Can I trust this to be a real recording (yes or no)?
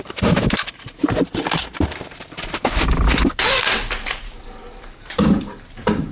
no